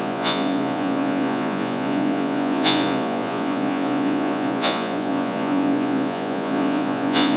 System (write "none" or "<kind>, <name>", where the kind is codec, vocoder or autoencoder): vocoder, Vocos